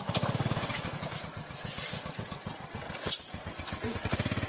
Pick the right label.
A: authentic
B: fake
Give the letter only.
A